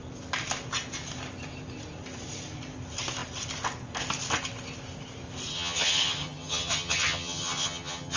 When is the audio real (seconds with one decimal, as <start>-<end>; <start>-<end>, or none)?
0.0-5.5